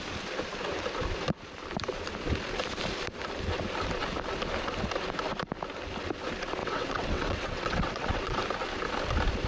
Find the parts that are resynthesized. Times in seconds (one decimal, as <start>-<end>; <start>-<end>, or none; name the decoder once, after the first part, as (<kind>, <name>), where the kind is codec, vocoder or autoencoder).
6.6-8.4 (vocoder, WaveNeXt)